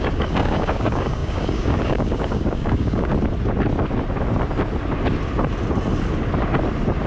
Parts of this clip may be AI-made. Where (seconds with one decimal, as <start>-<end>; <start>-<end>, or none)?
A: 0.0-3.1